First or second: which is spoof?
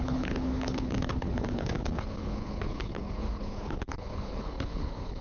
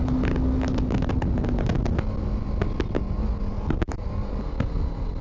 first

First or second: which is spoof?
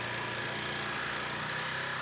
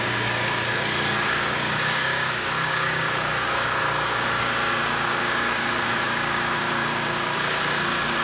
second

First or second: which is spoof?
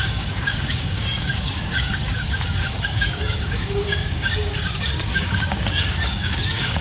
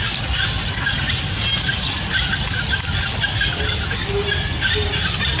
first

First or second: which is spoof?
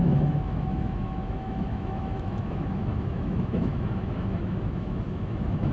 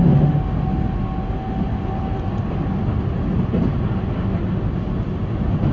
first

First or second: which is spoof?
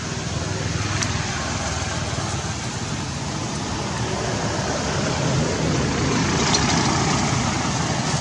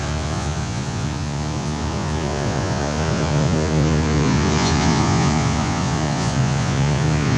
second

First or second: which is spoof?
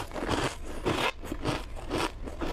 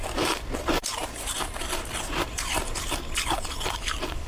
second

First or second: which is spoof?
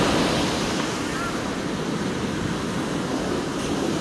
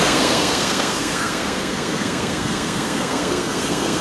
second